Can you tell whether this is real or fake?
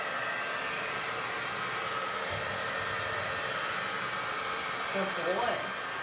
real